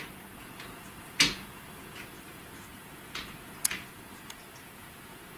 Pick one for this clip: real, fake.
fake